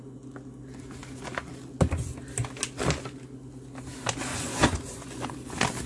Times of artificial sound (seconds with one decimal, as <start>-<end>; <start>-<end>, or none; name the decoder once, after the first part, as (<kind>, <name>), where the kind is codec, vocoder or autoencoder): 4.3-5.3 (vocoder, Vocos)